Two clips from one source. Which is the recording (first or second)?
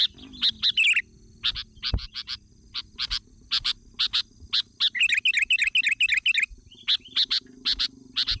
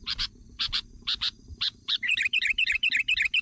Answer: first